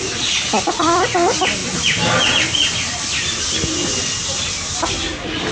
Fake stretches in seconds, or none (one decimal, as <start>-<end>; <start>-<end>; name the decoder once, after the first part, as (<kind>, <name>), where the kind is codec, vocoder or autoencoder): none